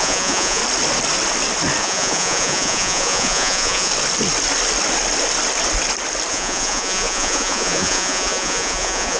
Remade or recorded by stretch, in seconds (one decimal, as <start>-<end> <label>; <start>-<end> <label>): 0.0-0.6 remade; 0.6-1.8 recorded; 1.8-3.9 remade; 3.9-6.3 recorded; 6.3-9.2 remade